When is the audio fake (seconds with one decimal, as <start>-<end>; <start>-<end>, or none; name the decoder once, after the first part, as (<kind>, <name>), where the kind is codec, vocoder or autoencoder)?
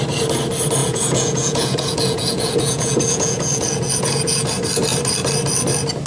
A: 0.8-4.5 (vocoder, Vocos)